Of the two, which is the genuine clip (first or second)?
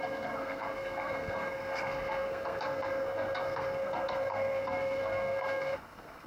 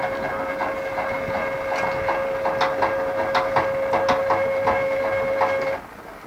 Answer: second